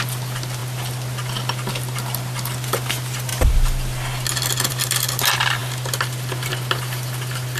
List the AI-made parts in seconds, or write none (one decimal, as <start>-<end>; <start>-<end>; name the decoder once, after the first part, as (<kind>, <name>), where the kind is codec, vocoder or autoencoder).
none